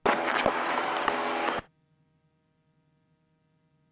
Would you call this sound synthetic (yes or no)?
no